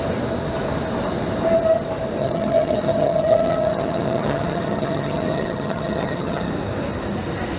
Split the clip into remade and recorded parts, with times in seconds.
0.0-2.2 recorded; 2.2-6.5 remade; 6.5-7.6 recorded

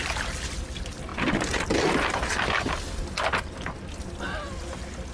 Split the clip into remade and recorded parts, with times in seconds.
0.0-5.1 recorded

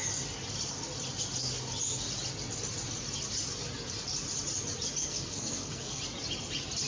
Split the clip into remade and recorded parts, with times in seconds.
0.0-5.0 recorded; 5.0-6.0 remade; 6.0-6.9 recorded